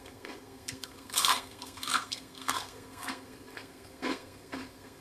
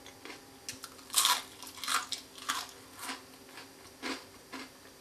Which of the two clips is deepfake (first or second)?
first